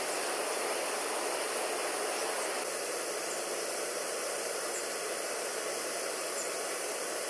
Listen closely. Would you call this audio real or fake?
real